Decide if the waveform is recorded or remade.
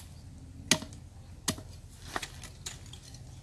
recorded